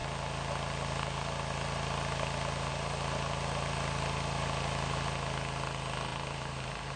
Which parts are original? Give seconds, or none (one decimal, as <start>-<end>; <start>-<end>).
0.0-6.1